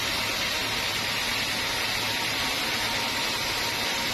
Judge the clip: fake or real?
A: real